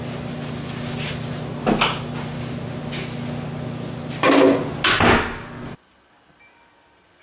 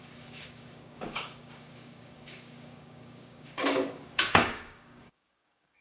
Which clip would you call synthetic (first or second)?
second